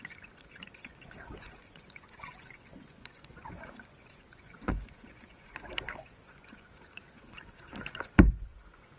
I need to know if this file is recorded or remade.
remade